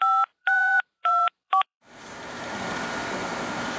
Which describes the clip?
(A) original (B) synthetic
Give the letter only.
B